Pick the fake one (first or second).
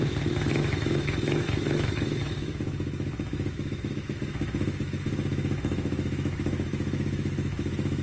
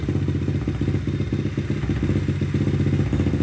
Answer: first